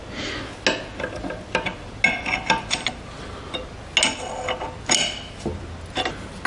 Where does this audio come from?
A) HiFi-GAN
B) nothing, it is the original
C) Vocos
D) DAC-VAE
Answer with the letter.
B